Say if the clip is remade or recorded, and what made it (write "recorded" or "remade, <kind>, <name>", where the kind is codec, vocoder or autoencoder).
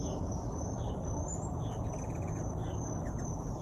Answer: recorded